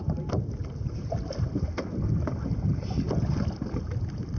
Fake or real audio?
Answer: real